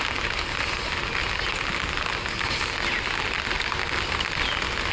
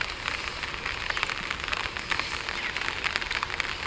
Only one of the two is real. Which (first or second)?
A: first